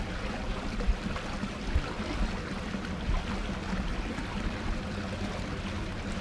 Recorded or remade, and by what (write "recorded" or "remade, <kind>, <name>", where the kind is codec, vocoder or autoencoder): recorded